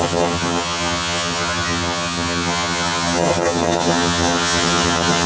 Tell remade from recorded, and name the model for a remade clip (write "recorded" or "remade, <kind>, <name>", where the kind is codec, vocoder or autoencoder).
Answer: remade, vocoder, HiFi-GAN